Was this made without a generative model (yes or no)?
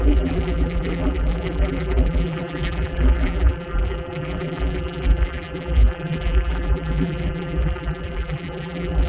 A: no